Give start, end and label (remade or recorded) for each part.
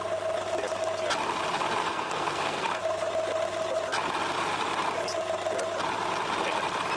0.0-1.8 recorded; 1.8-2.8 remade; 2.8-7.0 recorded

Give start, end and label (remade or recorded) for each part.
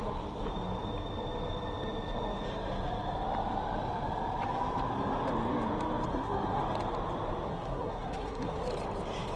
0.0-6.1 recorded; 6.1-6.6 remade; 6.6-7.5 recorded; 7.5-8.7 remade; 8.7-9.4 recorded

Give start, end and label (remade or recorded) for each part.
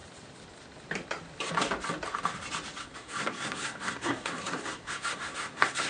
0.0-2.8 recorded; 2.8-5.9 remade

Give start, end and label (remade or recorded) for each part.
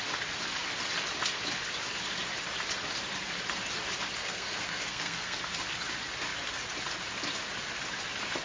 0.0-4.2 recorded; 4.2-5.4 remade; 5.4-8.4 recorded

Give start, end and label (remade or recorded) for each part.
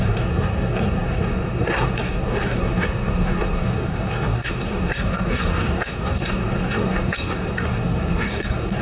0.0-8.8 remade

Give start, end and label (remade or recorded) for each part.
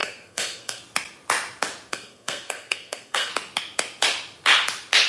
0.0-0.8 remade; 0.8-1.9 recorded; 1.9-3.3 remade; 3.3-5.1 recorded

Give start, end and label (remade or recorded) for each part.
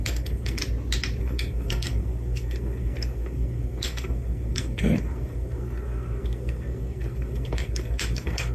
0.0-0.6 remade; 0.6-1.2 recorded; 1.2-8.5 remade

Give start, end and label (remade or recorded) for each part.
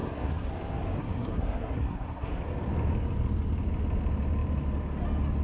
0.0-0.5 remade; 0.5-1.0 recorded; 1.0-2.4 remade; 2.4-5.4 recorded